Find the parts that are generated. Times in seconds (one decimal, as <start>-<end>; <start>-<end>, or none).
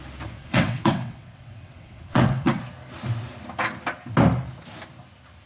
0.4-2.6